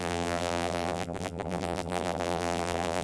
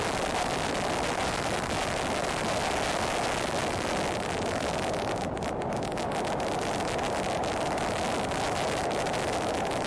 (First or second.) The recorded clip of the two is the second